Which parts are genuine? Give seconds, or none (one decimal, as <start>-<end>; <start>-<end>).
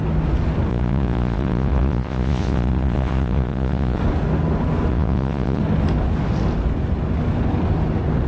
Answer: 0.0-0.7; 4.0-4.9; 5.6-8.3